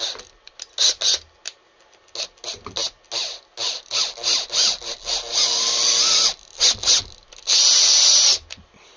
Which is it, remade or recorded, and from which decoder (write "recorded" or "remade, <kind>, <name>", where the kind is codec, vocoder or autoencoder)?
recorded